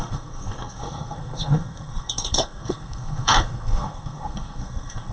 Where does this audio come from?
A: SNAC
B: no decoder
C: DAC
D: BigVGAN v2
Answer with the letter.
A